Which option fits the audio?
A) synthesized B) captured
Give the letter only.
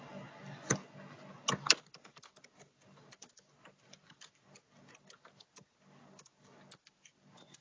B